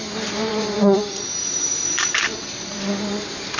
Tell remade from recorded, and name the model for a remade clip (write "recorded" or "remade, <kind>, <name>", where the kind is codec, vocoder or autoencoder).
remade, vocoder, BigVGAN v2